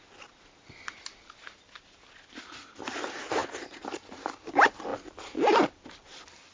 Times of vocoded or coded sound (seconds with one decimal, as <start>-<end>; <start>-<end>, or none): none